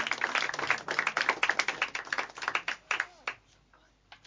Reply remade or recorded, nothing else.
recorded